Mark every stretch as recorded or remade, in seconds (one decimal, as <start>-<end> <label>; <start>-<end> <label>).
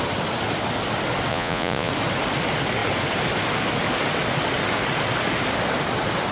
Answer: 0.0-1.3 recorded; 1.3-1.9 remade; 1.9-6.3 recorded